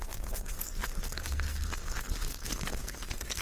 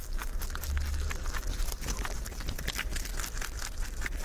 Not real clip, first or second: first